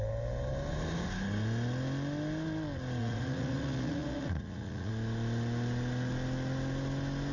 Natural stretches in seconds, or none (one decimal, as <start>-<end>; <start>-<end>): 0.0-3.0; 4.9-7.3